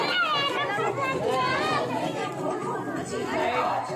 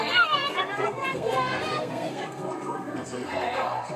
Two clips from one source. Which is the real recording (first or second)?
first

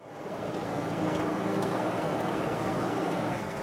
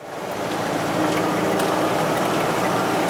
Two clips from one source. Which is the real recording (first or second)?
second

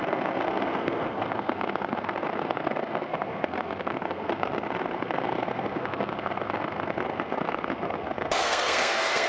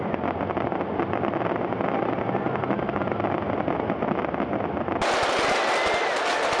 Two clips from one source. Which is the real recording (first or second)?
second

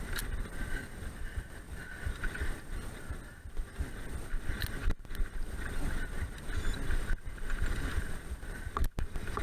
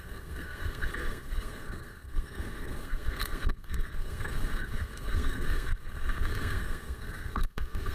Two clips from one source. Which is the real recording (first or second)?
first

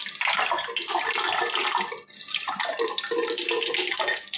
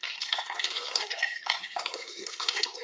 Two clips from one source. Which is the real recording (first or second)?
first